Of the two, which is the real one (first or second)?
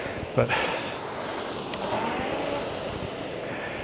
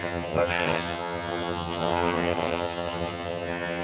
first